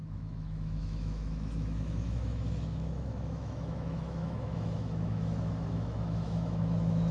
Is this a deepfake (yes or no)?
yes